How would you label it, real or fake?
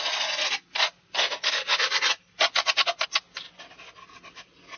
real